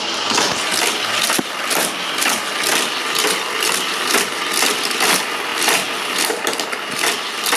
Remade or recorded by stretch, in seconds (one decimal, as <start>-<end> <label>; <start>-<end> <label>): 0.0-2.7 recorded; 2.7-4.8 remade; 4.8-7.6 recorded